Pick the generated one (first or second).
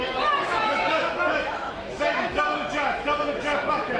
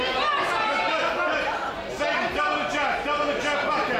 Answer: first